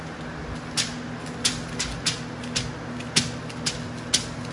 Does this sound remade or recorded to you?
recorded